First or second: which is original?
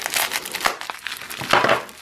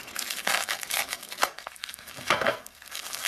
first